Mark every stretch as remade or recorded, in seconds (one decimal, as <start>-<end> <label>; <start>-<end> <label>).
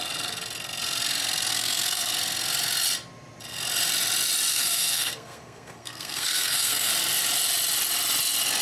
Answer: 0.0-1.5 recorded; 1.5-2.1 remade; 2.1-4.5 recorded; 4.5-6.9 remade; 6.9-8.6 recorded